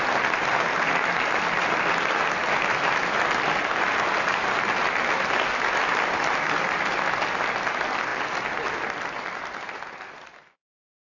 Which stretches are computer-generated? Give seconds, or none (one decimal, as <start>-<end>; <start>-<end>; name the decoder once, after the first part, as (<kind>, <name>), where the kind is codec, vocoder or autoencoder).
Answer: none